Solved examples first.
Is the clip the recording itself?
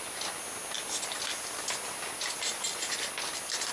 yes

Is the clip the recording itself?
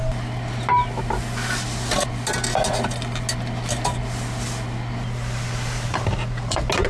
yes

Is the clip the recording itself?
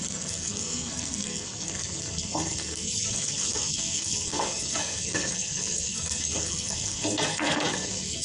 no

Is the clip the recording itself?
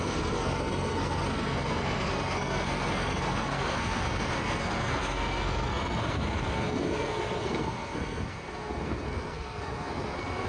no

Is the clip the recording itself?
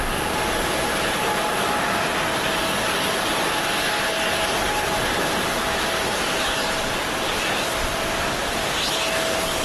yes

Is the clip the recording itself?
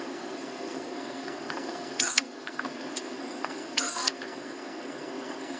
no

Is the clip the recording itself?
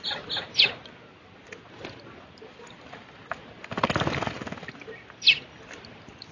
yes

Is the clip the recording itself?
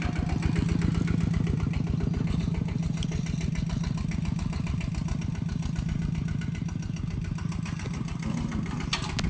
yes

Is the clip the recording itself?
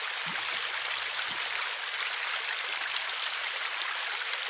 yes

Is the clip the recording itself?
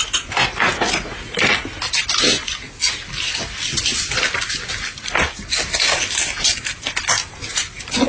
yes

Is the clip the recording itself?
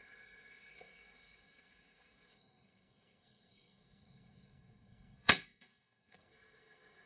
no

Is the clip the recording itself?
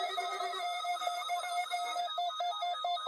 no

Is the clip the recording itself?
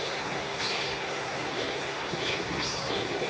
no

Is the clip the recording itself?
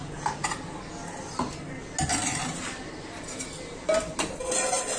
yes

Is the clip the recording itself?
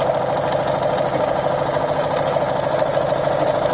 yes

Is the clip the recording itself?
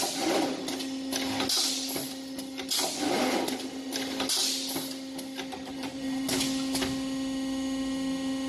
yes